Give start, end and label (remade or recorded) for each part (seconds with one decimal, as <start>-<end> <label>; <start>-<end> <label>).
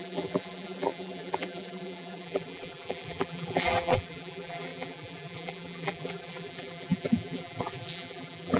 0.0-8.6 remade